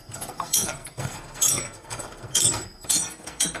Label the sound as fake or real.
fake